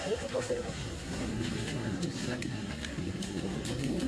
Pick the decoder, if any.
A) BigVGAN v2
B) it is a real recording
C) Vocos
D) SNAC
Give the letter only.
D